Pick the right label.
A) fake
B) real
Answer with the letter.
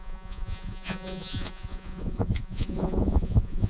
A